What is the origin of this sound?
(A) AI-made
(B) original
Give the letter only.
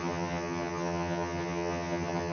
A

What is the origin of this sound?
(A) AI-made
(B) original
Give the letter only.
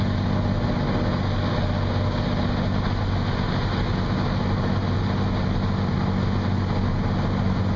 B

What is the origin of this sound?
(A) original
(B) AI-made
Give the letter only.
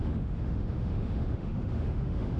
B